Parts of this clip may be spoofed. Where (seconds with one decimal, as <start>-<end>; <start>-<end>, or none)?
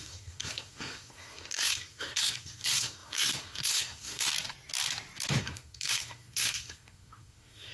0.0-4.3; 5.4-7.7